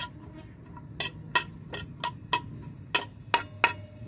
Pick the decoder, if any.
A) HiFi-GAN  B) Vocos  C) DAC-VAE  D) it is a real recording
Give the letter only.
D